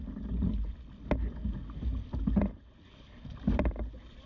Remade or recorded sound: recorded